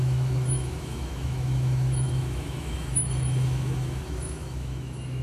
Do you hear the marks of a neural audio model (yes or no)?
yes